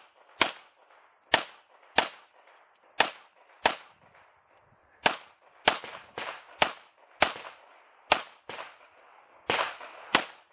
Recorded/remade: recorded